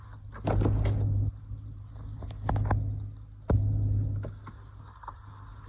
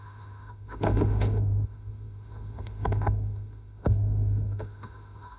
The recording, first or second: first